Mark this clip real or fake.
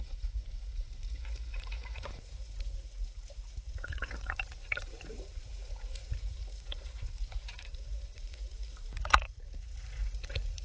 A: fake